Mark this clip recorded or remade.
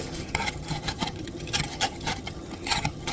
remade